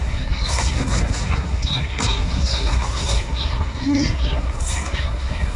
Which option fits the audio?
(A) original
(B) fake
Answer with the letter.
B